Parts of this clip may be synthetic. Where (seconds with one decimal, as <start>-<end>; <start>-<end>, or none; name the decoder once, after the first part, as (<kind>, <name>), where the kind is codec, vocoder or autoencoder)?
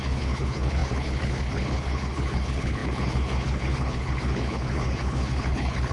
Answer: 0.0-5.9 (codec, HILCodec)